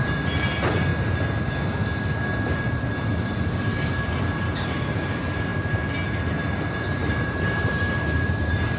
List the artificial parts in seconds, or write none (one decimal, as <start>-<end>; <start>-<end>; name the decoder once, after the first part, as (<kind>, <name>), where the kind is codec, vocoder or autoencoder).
0.0-0.9 (vocoder, BigVGAN v2); 3.6-5.5; 6.1-8.8